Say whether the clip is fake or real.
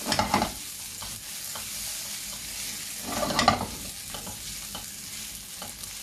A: real